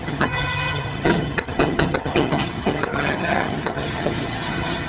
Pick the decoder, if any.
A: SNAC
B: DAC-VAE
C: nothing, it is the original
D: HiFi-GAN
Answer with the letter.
D